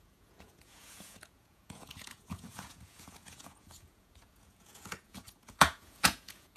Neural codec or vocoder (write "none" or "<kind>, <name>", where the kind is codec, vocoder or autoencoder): vocoder, Vocos